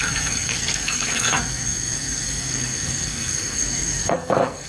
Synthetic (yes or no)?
yes